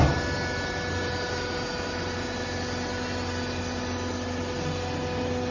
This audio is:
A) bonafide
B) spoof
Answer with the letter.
A